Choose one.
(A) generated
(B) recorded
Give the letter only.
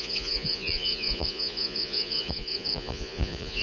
A